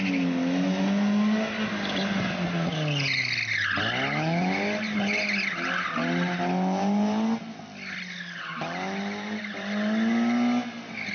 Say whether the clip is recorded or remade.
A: recorded